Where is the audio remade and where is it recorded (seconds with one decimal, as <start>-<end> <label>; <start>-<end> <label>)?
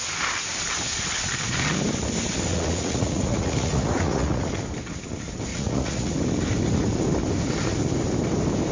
0.0-2.5 recorded; 2.5-4.5 remade; 4.5-5.5 recorded; 5.5-6.1 remade; 6.1-8.7 recorded